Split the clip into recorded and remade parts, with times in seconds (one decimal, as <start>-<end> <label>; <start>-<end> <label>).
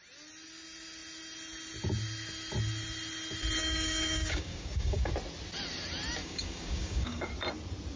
0.0-3.6 recorded; 3.6-5.1 remade; 5.1-6.2 recorded; 6.2-7.3 remade; 7.3-8.0 recorded